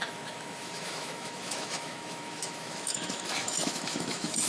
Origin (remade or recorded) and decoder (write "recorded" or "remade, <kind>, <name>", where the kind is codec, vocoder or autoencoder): remade, autoencoder, DAC-VAE